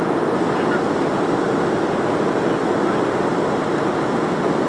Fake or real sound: real